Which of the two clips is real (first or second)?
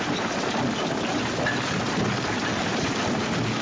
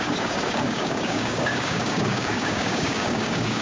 first